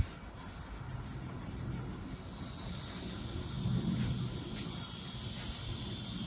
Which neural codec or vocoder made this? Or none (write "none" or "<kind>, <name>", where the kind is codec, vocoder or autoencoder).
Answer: none